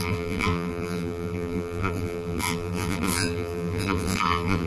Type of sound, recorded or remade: remade